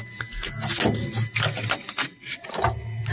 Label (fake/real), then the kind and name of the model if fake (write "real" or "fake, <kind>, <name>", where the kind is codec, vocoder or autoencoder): real